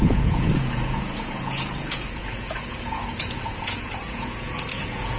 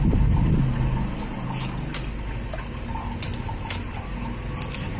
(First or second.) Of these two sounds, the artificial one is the first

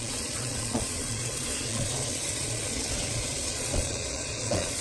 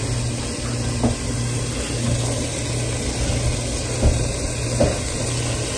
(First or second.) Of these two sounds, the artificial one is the first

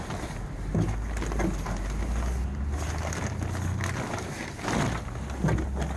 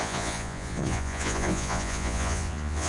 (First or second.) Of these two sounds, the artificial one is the second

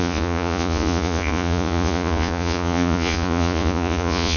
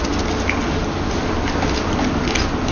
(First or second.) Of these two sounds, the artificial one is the first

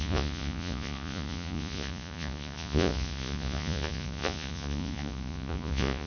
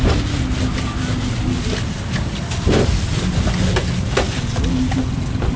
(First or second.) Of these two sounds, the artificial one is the first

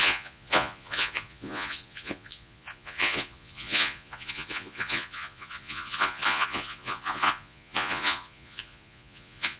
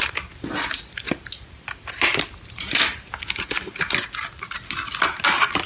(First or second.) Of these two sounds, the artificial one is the first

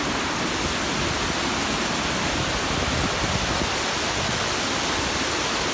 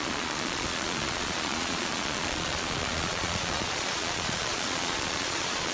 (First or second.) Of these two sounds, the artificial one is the second